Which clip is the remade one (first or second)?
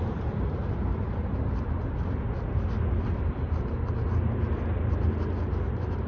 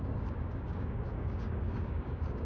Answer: second